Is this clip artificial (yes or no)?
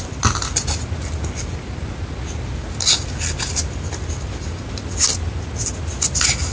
no